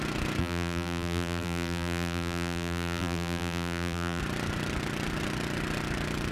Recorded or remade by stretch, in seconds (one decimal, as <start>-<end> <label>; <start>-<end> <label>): 0.0-0.4 recorded; 0.4-4.2 remade; 4.2-6.3 recorded